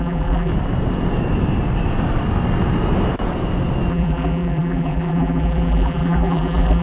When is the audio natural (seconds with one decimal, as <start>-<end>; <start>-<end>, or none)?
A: 0.5-3.9